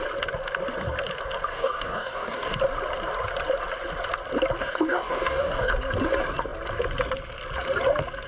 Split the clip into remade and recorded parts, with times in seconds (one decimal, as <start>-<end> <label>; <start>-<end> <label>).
0.0-1.5 recorded; 1.5-2.6 remade; 2.6-4.6 recorded; 4.6-5.7 remade; 5.7-8.3 recorded